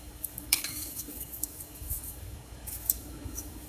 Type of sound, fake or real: fake